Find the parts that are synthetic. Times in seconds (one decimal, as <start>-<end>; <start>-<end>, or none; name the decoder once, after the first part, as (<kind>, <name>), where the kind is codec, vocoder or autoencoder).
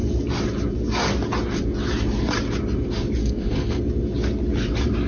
3.2-3.8 (codec, SNAC)